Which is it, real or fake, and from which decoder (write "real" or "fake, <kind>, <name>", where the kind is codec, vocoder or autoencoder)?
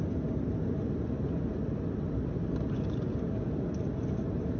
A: real